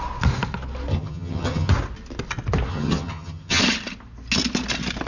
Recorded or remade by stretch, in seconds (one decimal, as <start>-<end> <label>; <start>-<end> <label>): 0.0-0.9 recorded; 0.9-1.7 remade; 1.7-2.7 recorded; 2.7-3.6 remade; 3.6-5.1 recorded